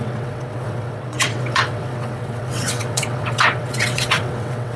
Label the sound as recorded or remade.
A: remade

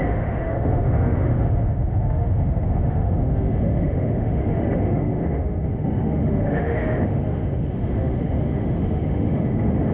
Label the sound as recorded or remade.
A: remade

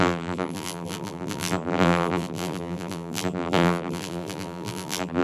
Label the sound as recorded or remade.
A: remade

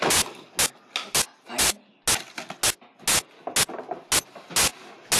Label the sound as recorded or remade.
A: recorded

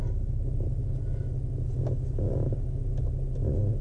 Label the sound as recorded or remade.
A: recorded